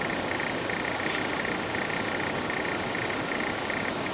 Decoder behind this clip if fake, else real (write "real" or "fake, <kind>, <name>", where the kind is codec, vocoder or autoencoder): real